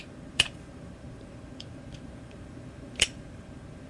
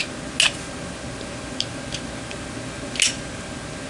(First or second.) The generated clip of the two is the first